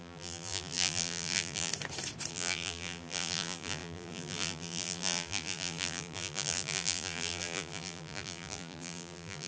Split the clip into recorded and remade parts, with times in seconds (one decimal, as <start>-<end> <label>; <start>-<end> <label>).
0.0-1.7 remade; 1.7-2.3 recorded; 2.3-9.5 remade